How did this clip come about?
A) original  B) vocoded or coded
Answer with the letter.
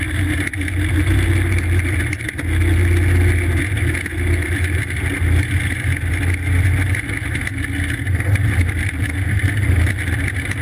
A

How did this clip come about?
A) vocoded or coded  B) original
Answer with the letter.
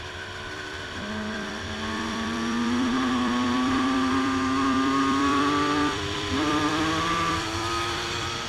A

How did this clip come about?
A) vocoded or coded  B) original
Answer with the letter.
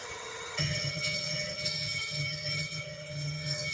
A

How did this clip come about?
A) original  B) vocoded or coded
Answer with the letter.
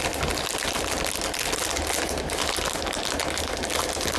A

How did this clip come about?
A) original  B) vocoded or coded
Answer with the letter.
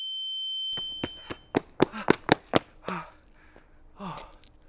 A